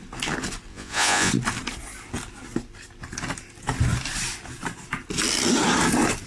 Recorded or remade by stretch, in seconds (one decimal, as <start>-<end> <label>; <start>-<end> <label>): 0.0-0.7 recorded; 0.7-1.3 remade; 1.3-6.3 recorded